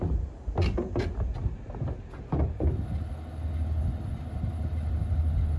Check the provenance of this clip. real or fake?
real